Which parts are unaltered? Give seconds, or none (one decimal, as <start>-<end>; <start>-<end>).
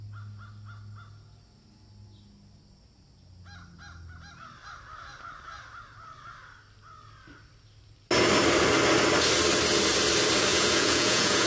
0.0-10.5